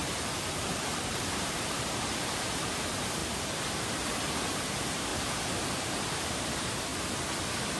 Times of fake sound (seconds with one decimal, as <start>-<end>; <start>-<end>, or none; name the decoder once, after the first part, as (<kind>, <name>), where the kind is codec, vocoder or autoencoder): 0.0-5.1 (vocoder, BigVGAN v2); 6.3-6.9